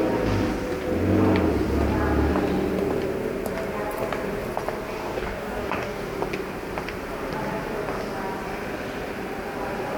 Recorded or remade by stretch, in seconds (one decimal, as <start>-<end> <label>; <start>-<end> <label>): 0.0-5.0 recorded; 5.0-6.0 remade; 6.0-10.0 recorded